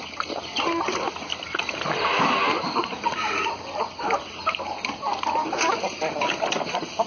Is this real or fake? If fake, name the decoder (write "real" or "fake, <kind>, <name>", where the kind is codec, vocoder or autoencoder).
real